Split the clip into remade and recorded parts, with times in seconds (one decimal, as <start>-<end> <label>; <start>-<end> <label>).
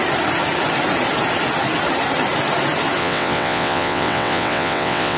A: 0.0-3.0 recorded; 3.0-5.2 remade